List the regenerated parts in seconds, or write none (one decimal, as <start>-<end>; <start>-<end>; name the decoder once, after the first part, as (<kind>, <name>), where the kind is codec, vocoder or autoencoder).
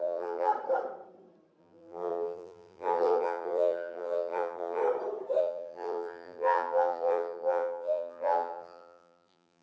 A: 0.0-0.5 (vocoder, BigVGAN v2); 1.6-4.8; 5.4-9.6